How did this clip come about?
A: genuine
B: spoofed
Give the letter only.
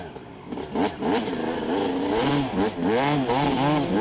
A